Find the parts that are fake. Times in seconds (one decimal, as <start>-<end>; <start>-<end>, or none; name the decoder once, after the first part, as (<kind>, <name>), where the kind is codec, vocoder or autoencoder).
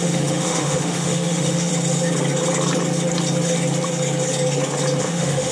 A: 0.0-1.7 (autoencoder, DAC-VAE); 5.0-5.5